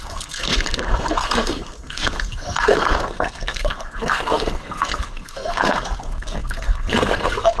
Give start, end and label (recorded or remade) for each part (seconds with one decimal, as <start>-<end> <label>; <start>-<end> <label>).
0.0-7.6 remade